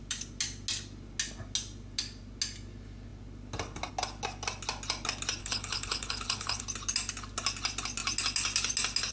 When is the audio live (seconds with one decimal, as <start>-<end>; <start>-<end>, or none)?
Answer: 0.0-5.4; 6.6-9.1